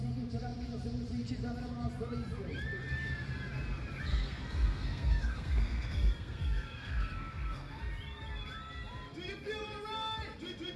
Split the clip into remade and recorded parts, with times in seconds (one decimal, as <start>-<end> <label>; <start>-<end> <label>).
0.0-4.1 recorded; 4.1-7.8 remade; 7.8-10.8 recorded